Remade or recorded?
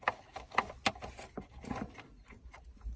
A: recorded